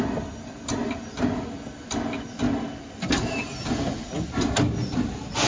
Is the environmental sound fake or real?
real